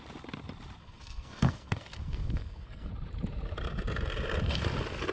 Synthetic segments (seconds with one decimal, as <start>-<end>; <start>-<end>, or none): 0.8-2.9